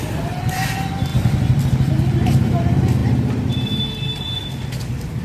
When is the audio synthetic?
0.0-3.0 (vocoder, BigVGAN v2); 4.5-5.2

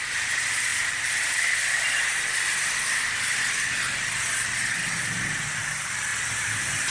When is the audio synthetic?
0.7-3.8 (vocoder, BigVGAN v2); 6.1-6.9

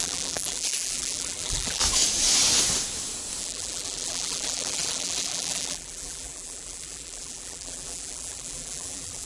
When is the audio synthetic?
0.0-1.8 (vocoder, BigVGAN v2); 3.4-9.3

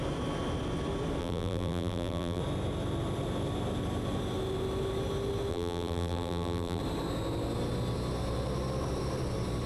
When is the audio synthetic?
1.2-2.4 (vocoder, BigVGAN v2); 5.5-6.8

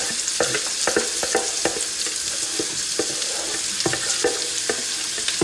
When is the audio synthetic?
4.2-4.8 (vocoder, BigVGAN v2)

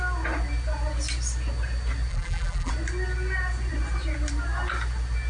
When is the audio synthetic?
2.1-2.7 (vocoder, BigVGAN v2)